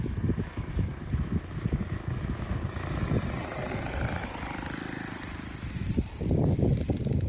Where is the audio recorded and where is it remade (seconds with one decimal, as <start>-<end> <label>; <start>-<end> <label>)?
0.0-2.6 recorded; 2.6-3.7 remade; 3.7-7.3 recorded